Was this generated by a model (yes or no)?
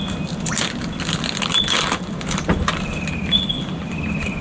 no